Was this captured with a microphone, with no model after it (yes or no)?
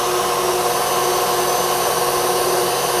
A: yes